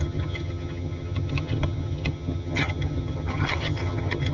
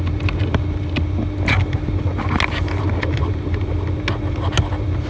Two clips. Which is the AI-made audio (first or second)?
first